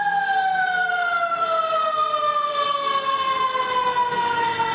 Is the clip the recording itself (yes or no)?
yes